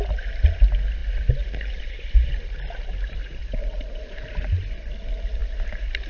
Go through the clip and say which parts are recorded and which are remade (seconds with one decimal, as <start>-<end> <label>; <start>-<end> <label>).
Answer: 0.0-6.1 recorded